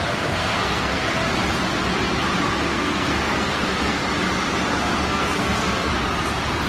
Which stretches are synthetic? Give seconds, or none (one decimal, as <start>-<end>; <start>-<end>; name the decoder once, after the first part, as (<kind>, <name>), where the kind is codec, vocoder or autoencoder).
0.0-1.2 (codec, SNAC); 2.7-4.0; 4.8-5.9